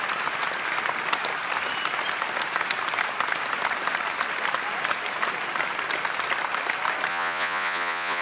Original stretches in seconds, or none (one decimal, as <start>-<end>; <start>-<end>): 0.0-7.1